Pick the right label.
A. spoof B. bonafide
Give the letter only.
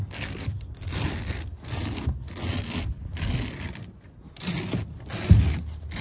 B